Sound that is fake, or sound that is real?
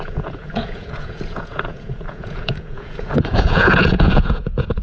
fake